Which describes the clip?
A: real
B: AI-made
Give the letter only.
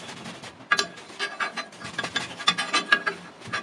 A